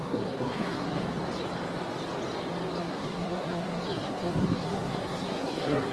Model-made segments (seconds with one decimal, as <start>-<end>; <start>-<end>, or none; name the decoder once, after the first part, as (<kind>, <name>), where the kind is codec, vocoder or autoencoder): 0.0-1.0 (codec, SNAC); 2.8-5.9